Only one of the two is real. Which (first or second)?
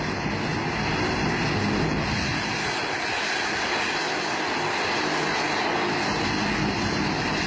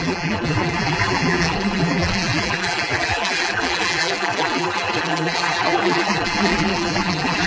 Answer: first